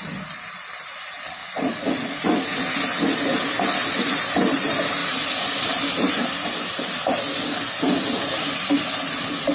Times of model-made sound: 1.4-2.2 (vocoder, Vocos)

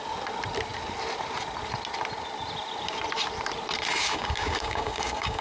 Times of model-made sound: 3.9-5.4 (codec, DAC)

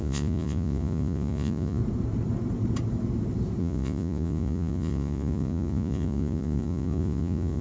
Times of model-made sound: 0.0-1.8 (vocoder, Vocos); 3.6-7.6

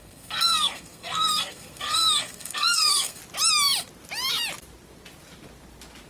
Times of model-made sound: 0.0-3.2 (codec, SNAC)

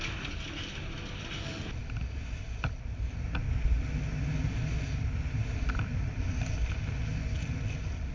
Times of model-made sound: none